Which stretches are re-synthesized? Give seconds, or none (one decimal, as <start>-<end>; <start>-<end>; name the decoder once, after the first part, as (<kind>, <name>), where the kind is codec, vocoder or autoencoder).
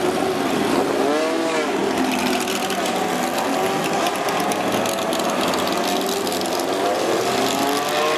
none